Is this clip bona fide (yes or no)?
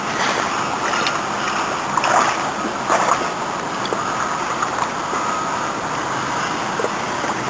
yes